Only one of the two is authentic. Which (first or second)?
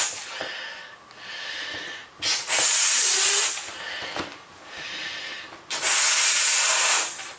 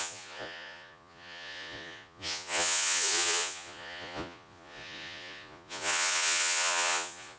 first